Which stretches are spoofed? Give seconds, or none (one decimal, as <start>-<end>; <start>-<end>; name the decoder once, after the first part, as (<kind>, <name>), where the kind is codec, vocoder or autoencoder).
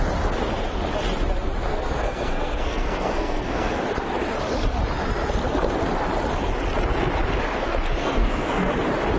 1.7-3.8 (codec, SNAC); 8.0-8.7